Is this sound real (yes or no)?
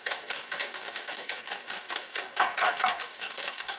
no